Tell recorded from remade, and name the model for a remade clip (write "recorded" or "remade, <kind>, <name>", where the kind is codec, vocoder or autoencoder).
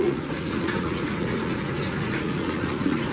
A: remade, vocoder, Vocos